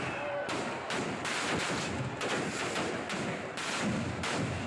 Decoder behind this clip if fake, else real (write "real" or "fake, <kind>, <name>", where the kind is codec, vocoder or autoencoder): real